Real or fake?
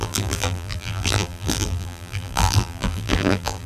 fake